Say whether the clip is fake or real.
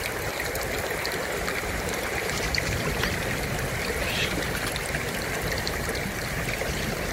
real